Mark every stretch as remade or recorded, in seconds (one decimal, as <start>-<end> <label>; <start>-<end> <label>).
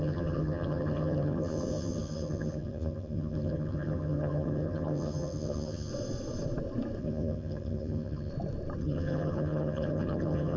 0.0-5.9 remade; 5.9-7.0 recorded; 7.0-8.3 remade; 8.3-8.8 recorded; 8.8-10.6 remade